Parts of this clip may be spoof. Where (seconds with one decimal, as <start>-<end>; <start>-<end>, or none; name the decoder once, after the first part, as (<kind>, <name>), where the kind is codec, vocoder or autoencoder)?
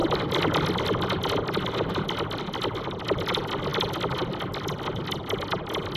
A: none